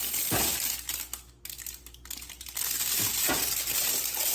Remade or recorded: recorded